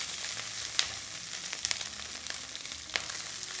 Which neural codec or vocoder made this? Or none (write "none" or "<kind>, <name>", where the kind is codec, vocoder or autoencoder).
vocoder, BigVGAN v2